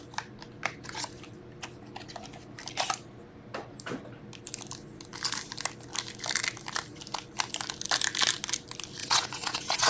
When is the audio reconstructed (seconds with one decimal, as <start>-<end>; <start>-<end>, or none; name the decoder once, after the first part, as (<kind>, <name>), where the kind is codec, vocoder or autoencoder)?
9.0-9.9 (vocoder, WaveNeXt)